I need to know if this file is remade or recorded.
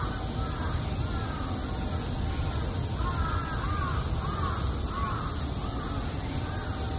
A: recorded